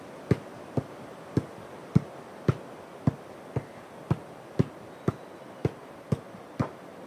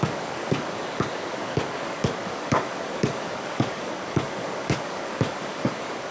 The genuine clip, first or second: first